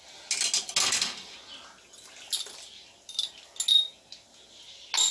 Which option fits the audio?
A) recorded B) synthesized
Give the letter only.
A